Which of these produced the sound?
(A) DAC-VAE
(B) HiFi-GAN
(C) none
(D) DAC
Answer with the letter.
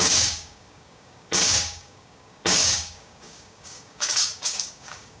D